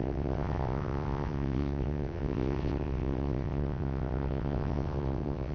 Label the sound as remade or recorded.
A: remade